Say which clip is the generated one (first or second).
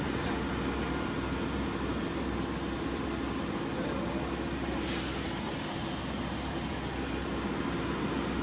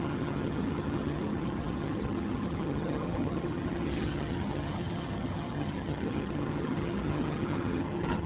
second